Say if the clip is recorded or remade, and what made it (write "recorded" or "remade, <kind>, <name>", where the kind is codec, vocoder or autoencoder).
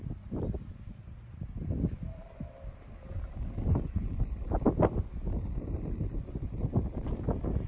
recorded